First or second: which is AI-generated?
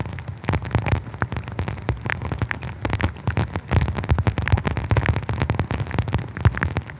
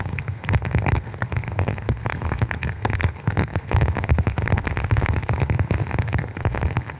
second